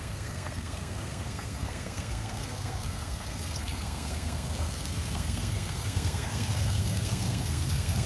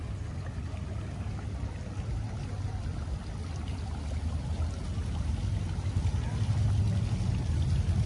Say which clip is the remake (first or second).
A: first